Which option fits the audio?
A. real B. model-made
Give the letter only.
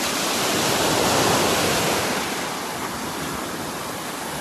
B